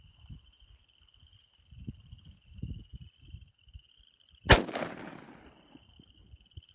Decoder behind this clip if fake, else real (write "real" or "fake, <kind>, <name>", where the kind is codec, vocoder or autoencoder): real